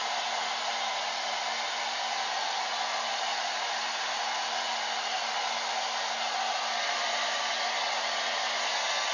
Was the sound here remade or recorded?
recorded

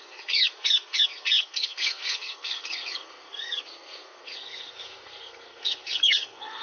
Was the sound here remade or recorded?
remade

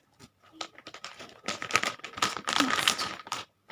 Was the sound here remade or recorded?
recorded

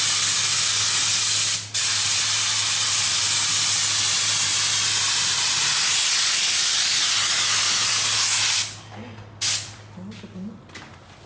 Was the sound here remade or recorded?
recorded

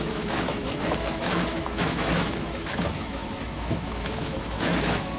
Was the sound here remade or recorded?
remade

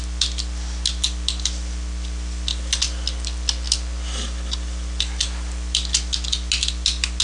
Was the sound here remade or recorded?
recorded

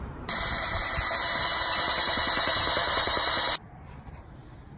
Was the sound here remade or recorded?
remade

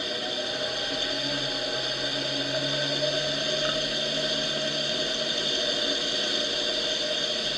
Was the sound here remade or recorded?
recorded